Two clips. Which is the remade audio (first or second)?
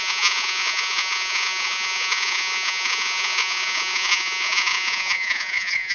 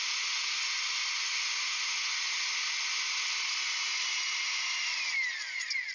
first